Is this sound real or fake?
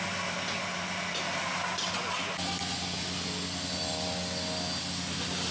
real